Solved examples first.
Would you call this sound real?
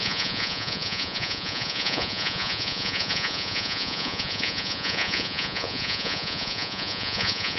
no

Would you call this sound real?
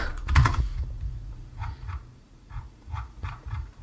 no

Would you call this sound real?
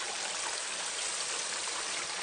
yes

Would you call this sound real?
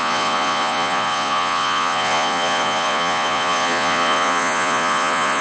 no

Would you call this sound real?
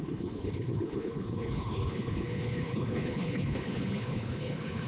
no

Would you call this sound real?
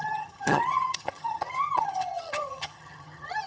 no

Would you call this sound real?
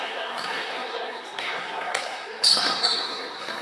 no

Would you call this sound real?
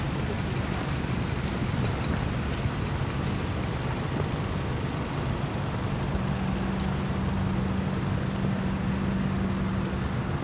yes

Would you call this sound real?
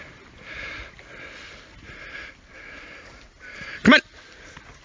yes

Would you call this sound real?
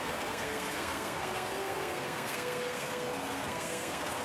no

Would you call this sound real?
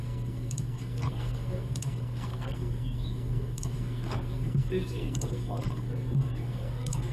no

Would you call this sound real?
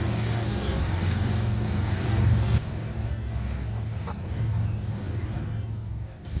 no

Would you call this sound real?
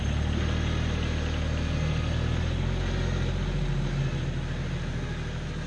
yes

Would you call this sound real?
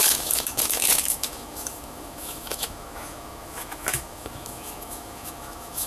no